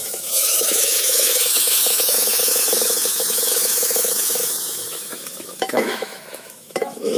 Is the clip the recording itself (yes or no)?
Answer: no